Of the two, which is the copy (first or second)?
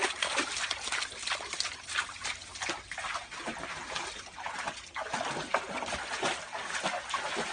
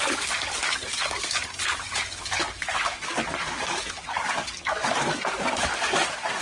second